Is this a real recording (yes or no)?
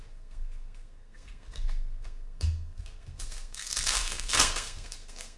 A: no